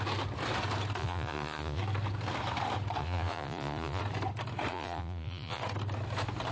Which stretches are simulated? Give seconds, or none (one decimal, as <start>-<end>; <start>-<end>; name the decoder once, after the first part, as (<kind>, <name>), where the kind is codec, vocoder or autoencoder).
1.0-1.8 (vocoder, Vocos); 3.0-4.0; 4.7-5.6